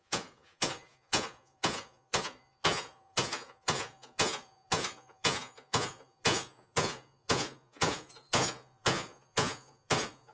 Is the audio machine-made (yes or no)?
yes